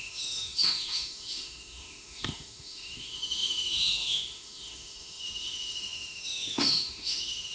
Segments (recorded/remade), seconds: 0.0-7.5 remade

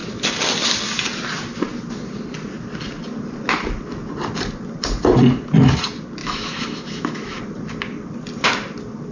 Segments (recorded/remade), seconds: 0.0-6.2 recorded; 6.2-7.4 remade; 7.4-9.1 recorded

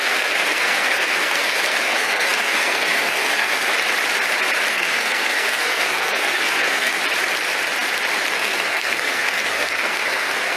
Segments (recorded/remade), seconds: 0.0-3.7 remade; 3.7-4.7 recorded; 4.7-7.0 remade; 7.0-8.3 recorded; 8.3-10.6 remade

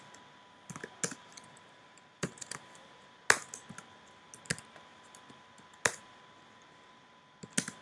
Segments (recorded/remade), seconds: 0.0-1.2 recorded; 1.2-3.2 remade; 3.2-7.8 recorded

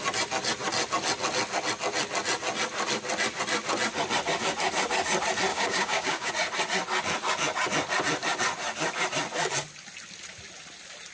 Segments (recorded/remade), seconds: 0.0-5.5 recorded; 5.5-6.3 remade; 6.3-11.1 recorded